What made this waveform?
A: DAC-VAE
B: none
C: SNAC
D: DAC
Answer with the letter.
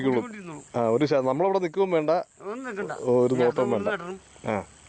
B